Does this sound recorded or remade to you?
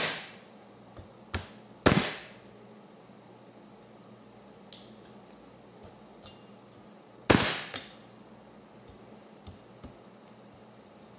recorded